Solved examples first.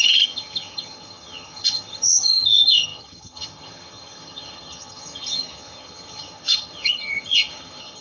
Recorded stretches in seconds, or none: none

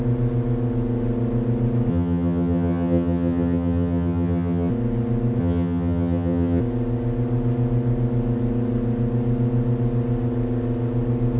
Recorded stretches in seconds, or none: 0.0-1.9; 4.7-5.4; 6.6-11.4

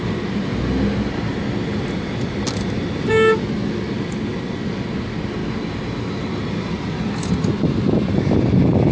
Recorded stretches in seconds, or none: 0.0-8.9

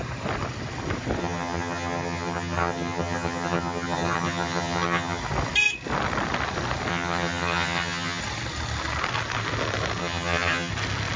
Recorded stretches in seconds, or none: 0.0-1.2; 5.2-6.9; 8.2-10.0; 10.7-11.2

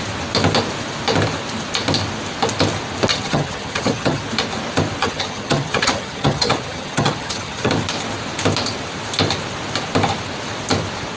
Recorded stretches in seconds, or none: 0.0-3.1; 4.2-5.0; 7.7-11.2

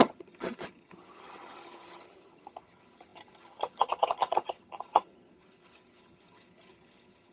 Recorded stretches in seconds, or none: none

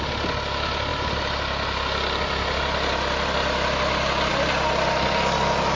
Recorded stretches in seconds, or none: 0.0-5.8

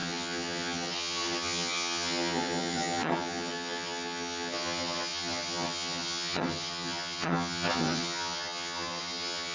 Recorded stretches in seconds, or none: none